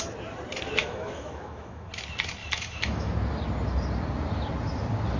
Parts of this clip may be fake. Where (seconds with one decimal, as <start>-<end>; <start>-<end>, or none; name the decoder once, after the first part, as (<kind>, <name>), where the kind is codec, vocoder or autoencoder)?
0.8-1.9 (autoencoder, DAC-VAE); 2.4-3.1